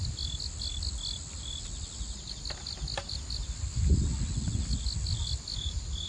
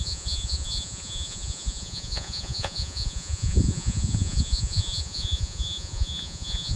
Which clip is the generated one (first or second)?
second